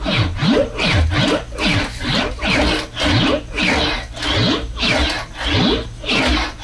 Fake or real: real